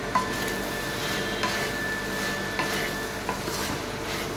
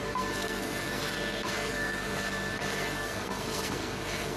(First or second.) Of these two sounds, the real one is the first